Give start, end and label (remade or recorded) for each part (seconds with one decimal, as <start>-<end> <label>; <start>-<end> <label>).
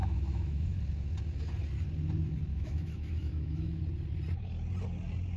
0.0-0.8 remade; 0.8-2.5 recorded; 2.5-3.8 remade; 3.8-5.4 recorded